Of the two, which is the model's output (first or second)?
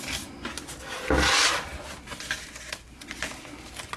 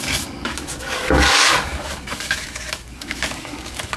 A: second